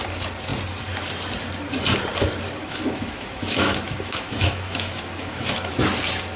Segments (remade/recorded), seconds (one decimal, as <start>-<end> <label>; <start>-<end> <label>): 0.0-2.6 recorded; 2.6-5.7 remade; 5.7-6.4 recorded

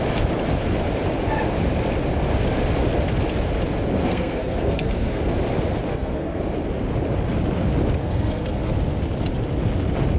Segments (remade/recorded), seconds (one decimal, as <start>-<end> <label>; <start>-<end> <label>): 0.0-4.0 recorded; 4.0-5.2 remade; 5.2-5.9 recorded; 5.9-6.4 remade; 6.4-8.0 recorded; 8.0-8.7 remade; 8.7-10.2 recorded

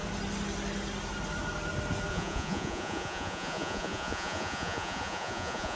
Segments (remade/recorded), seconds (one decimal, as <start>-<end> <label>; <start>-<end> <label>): 0.0-2.1 recorded; 2.1-5.8 remade